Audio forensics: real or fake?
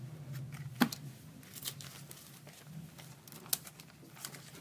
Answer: real